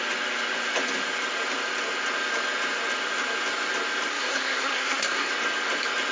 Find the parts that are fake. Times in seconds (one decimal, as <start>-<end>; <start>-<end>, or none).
4.1-5.3